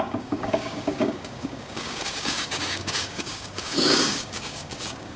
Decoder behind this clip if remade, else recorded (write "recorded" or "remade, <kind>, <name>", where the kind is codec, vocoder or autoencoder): remade, codec, DAC